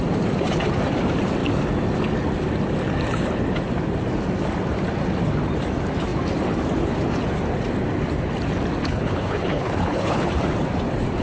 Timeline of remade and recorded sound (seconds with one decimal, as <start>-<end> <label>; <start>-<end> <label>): 0.0-8.8 recorded; 8.8-10.3 remade; 10.3-11.2 recorded